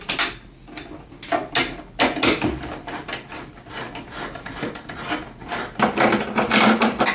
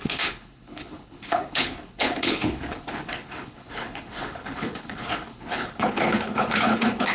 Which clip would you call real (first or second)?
first